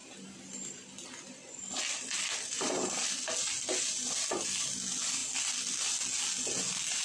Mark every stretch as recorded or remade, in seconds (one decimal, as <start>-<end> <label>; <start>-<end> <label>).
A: 0.0-7.0 recorded